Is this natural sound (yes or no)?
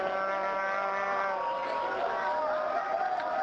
yes